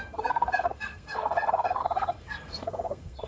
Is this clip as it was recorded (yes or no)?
no